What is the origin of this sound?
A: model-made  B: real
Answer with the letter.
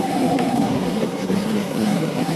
A